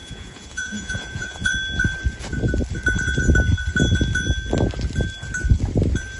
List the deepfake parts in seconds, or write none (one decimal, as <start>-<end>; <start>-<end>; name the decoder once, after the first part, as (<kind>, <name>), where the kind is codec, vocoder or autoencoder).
0.0-1.5 (vocoder, Vocos)